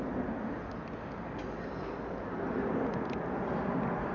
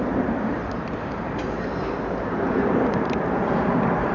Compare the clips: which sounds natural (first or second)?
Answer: first